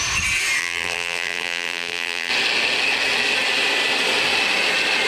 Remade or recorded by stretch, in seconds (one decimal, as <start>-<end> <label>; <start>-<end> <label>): 0.0-0.6 recorded; 0.6-2.3 remade; 2.3-5.1 recorded